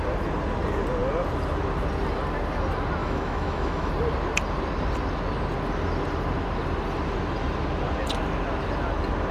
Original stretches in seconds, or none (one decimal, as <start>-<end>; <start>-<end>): 0.0-3.0; 3.9-9.3